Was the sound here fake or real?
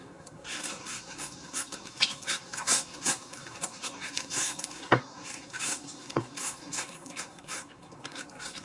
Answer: fake